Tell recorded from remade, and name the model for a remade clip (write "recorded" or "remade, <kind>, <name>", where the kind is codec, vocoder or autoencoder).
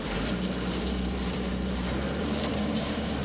remade, vocoder, BigVGAN v2